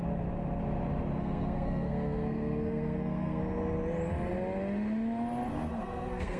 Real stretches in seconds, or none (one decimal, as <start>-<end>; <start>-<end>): 0.0-1.2; 3.4-5.5